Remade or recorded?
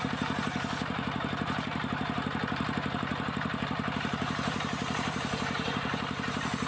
remade